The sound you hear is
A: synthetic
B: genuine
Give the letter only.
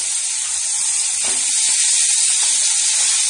B